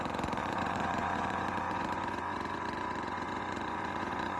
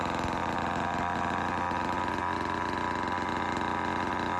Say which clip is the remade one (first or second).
first